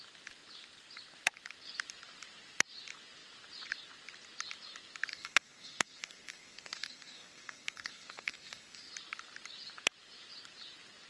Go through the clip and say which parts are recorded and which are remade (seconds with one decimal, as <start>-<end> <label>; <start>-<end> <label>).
0.0-5.1 recorded; 5.1-8.9 remade; 8.9-11.1 recorded